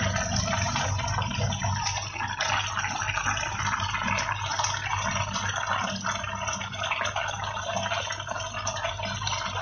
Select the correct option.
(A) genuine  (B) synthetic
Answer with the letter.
A